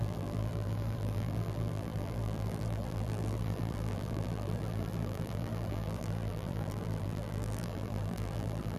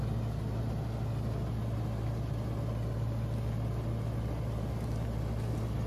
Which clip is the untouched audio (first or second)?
second